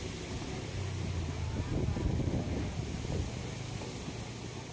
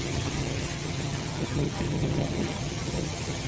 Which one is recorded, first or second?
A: first